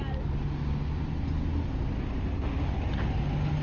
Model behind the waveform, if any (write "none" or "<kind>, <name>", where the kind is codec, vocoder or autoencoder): none